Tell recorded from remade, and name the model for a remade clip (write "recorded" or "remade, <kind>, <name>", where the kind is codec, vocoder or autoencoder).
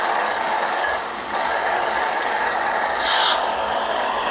remade, codec, DAC